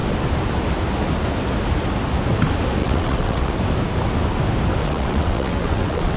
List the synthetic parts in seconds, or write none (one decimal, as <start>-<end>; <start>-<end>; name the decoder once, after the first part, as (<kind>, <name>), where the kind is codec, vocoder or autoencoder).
2.8-3.5 (vocoder, WaveNeXt); 4.8-6.2